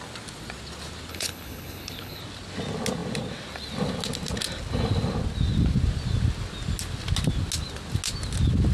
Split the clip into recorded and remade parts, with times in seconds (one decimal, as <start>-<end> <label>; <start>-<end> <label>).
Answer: 0.0-1.1 recorded; 1.1-2.2 remade; 2.2-8.7 recorded